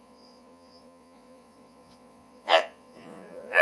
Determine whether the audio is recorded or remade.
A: remade